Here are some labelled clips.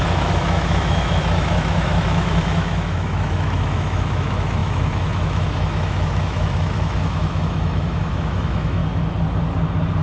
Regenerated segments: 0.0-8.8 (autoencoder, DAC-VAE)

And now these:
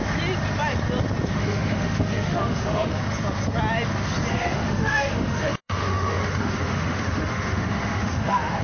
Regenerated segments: 1.3-3.0 (autoencoder, DAC-VAE); 4.3-8.6

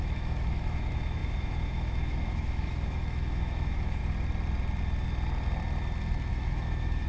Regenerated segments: 0.0-4.0 (autoencoder, DAC-VAE); 6.3-7.1